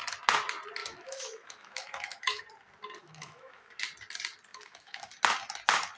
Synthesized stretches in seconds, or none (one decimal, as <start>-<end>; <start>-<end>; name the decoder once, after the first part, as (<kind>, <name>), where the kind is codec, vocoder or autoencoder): 0.8-2.4 (autoencoder, DAC-VAE); 3.0-3.7; 4.5-5.1